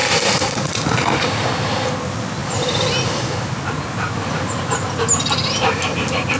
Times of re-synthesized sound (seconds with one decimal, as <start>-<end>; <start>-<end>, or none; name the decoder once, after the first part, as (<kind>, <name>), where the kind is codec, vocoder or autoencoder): none